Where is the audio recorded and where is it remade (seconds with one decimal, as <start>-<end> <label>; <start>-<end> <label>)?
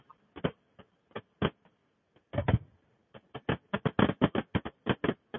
0.0-5.4 recorded